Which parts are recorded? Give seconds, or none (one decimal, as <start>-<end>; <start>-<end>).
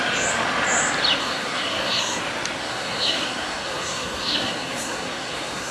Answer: 0.0-1.2; 2.2-2.6